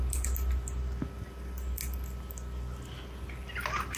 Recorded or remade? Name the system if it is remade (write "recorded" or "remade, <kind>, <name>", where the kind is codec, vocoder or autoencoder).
recorded